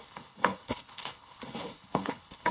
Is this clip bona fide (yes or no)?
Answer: no